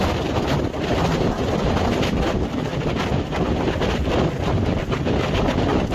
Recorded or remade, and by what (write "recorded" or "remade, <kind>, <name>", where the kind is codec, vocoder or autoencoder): recorded